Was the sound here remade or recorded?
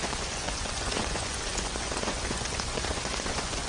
remade